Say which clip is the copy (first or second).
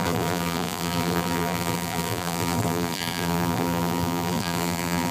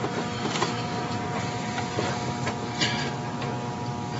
first